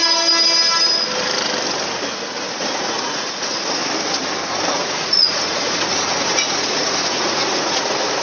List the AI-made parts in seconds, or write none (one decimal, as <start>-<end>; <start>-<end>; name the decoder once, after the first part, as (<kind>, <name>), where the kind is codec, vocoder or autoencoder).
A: 2.5-3.8 (vocoder, Vocos); 4.7-8.2

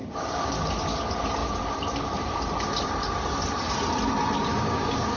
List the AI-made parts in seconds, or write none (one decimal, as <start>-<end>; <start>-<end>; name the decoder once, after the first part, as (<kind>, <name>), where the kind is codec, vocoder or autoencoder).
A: 0.0-0.5 (codec, DAC); 4.5-5.2

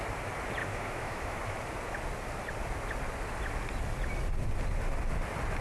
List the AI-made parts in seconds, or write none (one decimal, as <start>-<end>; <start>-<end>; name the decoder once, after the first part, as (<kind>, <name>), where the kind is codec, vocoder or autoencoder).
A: 0.6-1.4 (autoencoder, DAC-VAE)